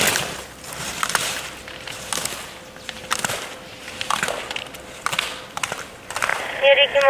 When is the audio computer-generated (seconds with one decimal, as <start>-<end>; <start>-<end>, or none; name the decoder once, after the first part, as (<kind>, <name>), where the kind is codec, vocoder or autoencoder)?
6.3-7.1 (vocoder, BigVGAN v2)